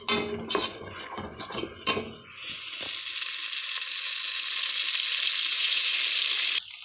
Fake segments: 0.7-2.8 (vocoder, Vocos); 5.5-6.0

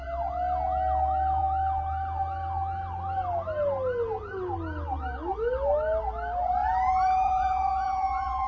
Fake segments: 6.6-8.5 (vocoder, Vocos)

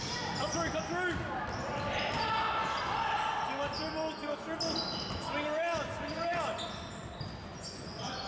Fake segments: 7.5-8.3 (vocoder, Vocos)

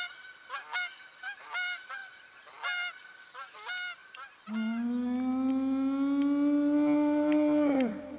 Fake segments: none

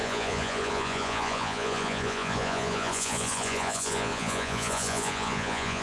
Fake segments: 0.0-5.8 (vocoder, Vocos)

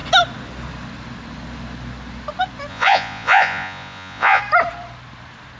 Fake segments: 2.7-4.4 (vocoder, Vocos)